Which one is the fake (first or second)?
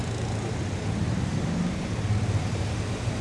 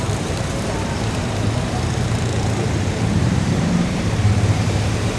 second